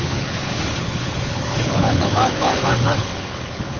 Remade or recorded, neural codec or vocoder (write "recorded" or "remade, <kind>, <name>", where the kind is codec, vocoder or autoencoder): remade, codec, HILCodec